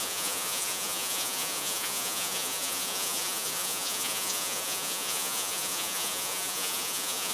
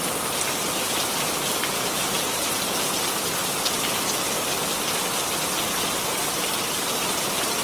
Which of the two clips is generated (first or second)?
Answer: first